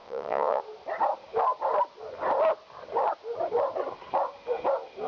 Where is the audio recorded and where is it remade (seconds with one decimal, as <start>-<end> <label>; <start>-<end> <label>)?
0.0-0.6 remade; 0.6-5.1 recorded